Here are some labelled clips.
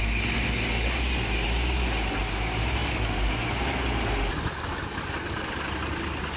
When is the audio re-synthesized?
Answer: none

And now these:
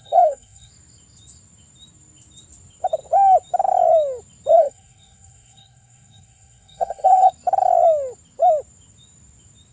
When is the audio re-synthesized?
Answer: 0.0-0.7 (codec, SNAC); 4.5-7.3

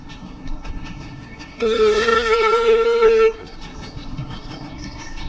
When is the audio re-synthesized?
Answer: 0.0-5.3 (codec, SNAC)

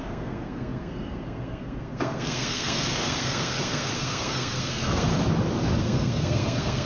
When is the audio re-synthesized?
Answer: 0.0-5.1 (codec, SNAC); 5.8-6.9

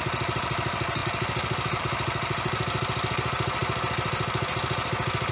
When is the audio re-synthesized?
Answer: none